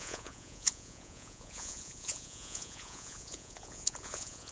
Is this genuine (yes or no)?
no